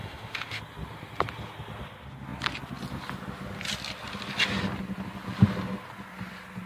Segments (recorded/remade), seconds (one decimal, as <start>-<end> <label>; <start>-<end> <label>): 0.0-0.6 remade; 0.6-6.7 recorded